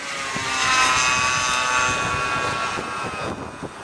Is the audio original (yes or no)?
yes